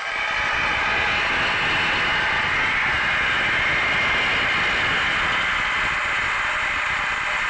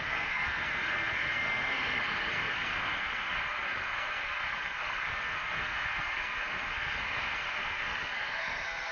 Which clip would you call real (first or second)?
first